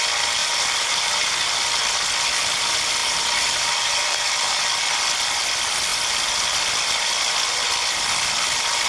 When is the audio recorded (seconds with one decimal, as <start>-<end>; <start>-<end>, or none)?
0.0-0.4; 1.3-3.0; 4.6-8.9